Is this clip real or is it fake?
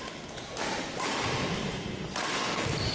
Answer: fake